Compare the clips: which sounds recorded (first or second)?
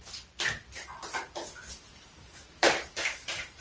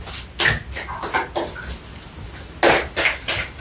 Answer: second